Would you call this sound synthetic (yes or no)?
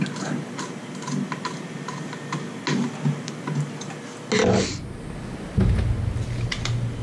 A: no